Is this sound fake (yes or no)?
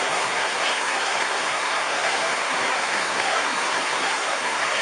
yes